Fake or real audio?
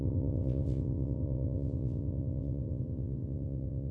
fake